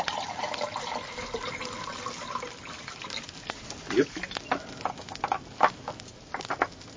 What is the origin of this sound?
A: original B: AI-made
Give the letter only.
A